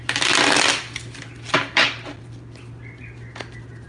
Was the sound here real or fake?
real